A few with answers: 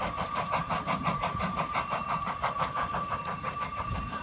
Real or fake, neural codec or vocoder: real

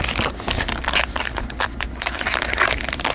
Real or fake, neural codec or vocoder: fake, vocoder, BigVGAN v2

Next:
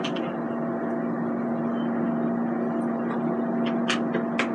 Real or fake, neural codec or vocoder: real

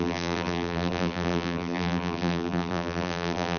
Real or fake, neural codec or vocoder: fake, vocoder, BigVGAN v2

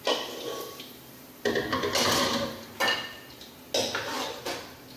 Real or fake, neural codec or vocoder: real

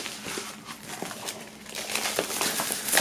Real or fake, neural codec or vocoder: fake, vocoder, BigVGAN v2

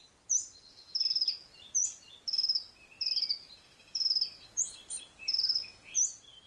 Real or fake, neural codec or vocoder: fake, vocoder, BigVGAN v2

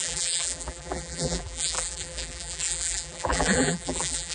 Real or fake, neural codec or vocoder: fake, vocoder, BigVGAN v2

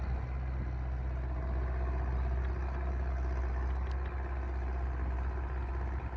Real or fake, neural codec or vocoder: real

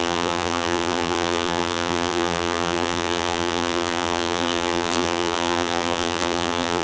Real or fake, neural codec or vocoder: fake, vocoder, BigVGAN v2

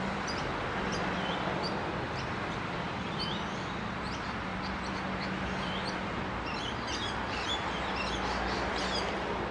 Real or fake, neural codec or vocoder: fake, vocoder, BigVGAN v2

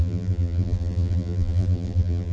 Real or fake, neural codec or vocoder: fake, vocoder, BigVGAN v2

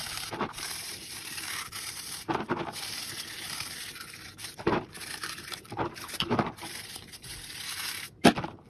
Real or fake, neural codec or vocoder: fake, vocoder, BigVGAN v2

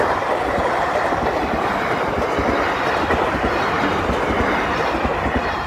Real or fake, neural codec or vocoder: real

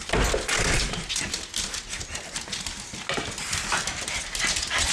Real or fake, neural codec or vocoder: real